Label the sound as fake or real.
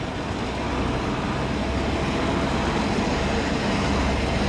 real